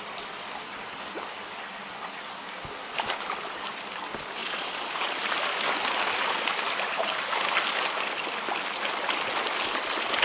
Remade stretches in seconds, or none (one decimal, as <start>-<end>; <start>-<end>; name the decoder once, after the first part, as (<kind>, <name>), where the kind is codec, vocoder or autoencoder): 4.4-5.1 (vocoder, Vocos)